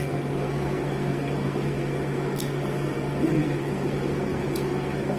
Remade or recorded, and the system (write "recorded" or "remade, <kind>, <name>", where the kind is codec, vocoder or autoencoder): remade, codec, SNAC